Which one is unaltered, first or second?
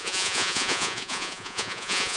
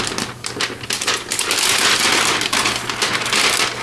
second